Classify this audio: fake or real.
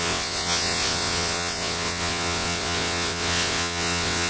fake